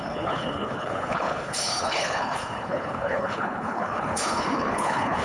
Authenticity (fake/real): fake